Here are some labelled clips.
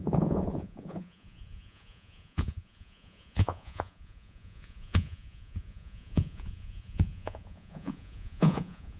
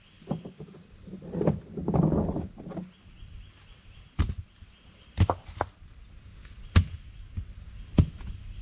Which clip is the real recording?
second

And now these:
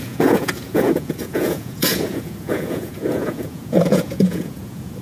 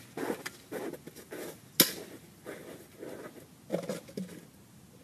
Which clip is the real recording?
second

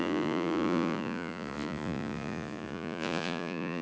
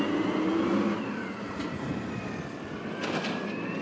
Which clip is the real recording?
second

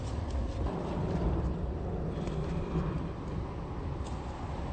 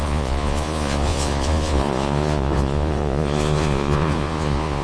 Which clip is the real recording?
first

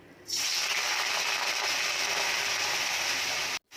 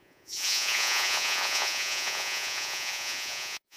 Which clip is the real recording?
first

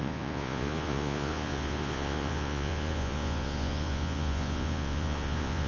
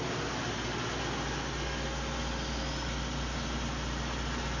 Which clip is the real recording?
second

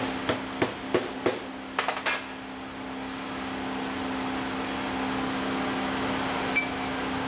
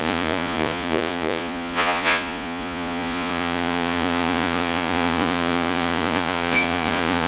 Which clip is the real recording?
first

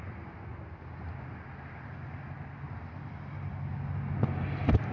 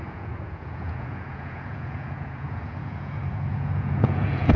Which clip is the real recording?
first